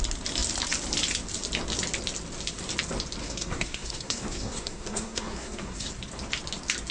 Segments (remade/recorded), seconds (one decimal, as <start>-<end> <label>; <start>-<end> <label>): 0.0-3.2 recorded; 3.2-5.9 remade; 5.9-6.9 recorded